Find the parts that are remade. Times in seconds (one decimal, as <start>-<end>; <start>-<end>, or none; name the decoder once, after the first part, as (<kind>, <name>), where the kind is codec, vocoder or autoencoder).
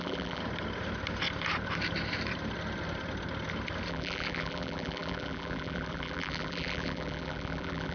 0.0-0.4 (vocoder, BigVGAN v2); 3.9-7.9